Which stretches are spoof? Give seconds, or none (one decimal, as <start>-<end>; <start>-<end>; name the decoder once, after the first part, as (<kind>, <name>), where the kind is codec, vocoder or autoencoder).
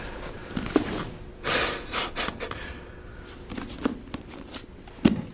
0.4-2.8 (vocoder, BigVGAN v2)